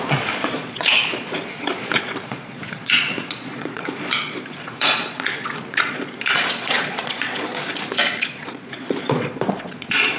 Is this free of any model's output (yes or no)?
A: no